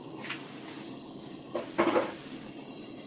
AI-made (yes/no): no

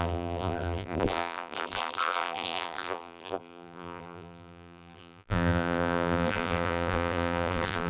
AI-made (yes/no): yes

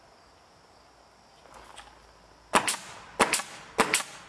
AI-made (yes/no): no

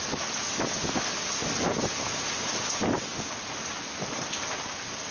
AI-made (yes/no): no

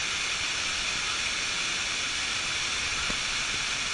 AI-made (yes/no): no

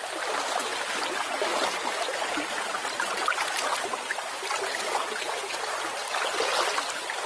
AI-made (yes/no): no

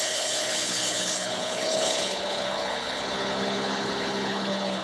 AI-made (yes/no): yes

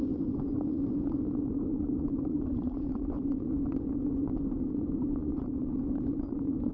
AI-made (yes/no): yes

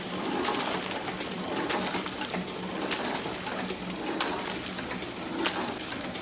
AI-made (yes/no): no